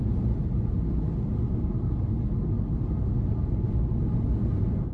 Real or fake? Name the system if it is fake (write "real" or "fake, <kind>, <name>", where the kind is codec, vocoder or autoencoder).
real